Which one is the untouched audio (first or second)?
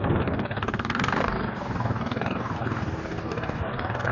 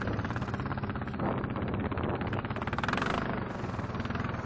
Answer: second